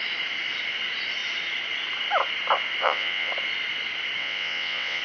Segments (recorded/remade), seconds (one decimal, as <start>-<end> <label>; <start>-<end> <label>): 0.0-2.8 recorded; 2.8-3.3 remade; 3.3-4.2 recorded; 4.2-5.0 remade